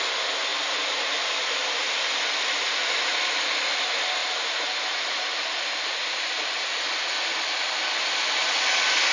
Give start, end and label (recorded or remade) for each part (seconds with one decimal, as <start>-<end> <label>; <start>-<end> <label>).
0.0-0.5 recorded; 0.5-2.1 remade; 2.1-4.2 recorded; 4.2-6.9 remade; 6.9-9.1 recorded

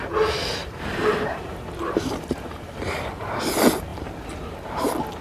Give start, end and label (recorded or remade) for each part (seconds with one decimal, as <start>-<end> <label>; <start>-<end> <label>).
0.0-0.6 recorded; 0.6-3.1 remade; 3.1-5.2 recorded

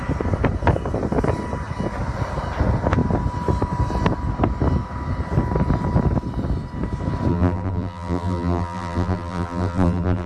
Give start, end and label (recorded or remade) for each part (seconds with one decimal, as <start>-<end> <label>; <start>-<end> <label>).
0.0-7.3 recorded; 7.3-10.3 remade

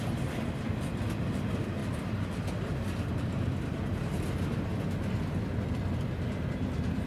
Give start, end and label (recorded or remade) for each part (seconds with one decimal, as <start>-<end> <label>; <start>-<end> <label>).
0.0-1.8 recorded; 1.8-4.1 remade; 4.1-7.1 recorded

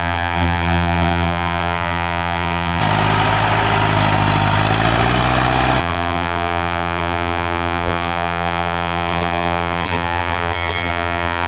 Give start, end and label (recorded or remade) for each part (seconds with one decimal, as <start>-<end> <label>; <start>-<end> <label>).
0.0-2.8 remade; 2.8-5.8 recorded; 5.8-11.5 remade